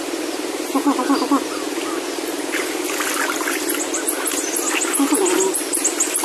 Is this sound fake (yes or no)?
no